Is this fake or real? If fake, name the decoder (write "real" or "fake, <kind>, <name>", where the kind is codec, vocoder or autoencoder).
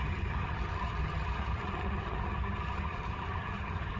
fake, vocoder, HiFi-GAN